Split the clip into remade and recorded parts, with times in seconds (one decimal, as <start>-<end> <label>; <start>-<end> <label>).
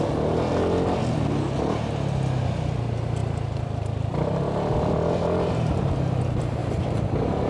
0.0-3.2 recorded; 3.2-5.9 remade; 5.9-6.6 recorded; 6.6-7.5 remade